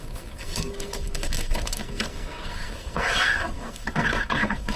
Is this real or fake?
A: fake